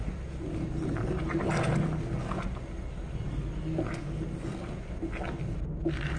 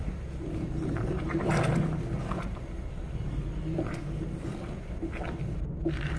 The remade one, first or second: second